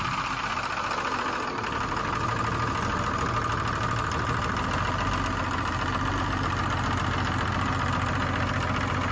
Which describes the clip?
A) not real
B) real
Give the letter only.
B